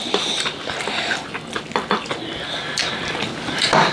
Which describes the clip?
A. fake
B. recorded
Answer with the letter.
B